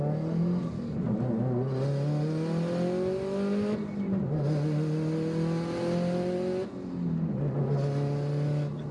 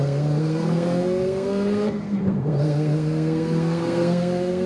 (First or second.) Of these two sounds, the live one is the first